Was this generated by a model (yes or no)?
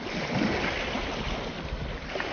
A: no